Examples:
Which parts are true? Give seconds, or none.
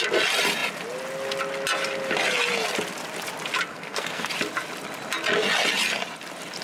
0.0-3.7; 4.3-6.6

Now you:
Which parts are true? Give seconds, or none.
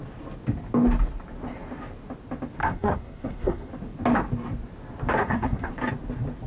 0.0-2.6; 3.7-5.2; 5.7-6.5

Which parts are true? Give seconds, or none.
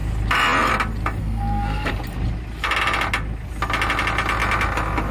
0.0-1.2; 1.9-5.1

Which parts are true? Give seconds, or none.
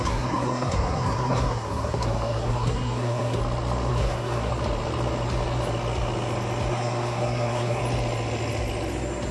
3.4-3.9; 4.5-6.7; 7.8-9.3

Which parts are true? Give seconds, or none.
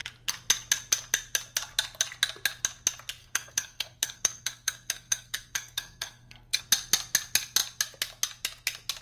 0.0-3.2; 6.6-9.0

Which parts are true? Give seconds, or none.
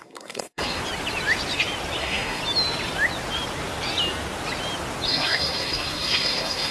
0.8-2.0; 2.4-5.1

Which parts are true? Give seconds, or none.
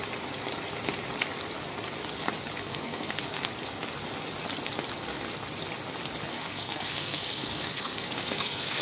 0.0-2.6; 3.1-6.3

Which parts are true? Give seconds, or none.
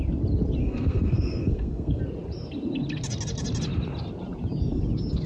0.0-0.6; 2.0-5.3